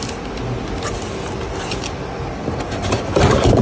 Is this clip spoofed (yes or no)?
no